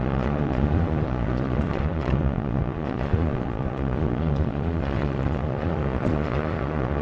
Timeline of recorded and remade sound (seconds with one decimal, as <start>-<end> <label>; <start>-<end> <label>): 0.0-7.0 remade